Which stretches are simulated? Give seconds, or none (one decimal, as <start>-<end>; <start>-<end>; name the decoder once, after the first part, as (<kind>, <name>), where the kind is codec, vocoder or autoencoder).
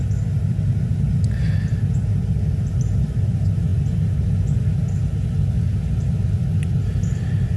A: none